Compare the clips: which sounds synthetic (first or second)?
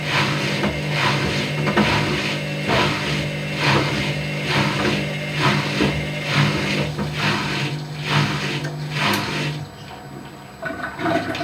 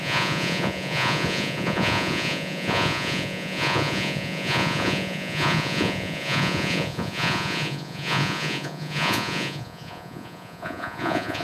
second